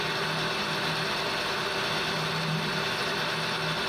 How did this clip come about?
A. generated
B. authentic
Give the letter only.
B